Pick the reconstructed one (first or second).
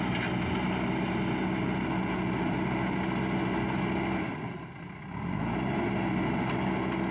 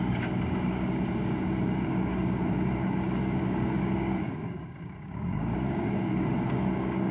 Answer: second